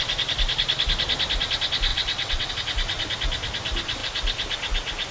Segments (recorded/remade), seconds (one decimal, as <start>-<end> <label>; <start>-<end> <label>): 0.0-1.9 recorded; 1.9-2.5 remade; 2.5-5.1 recorded